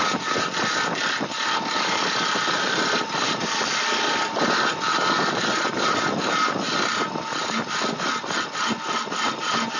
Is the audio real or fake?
real